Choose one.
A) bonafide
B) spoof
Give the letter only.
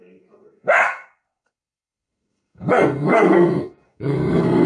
B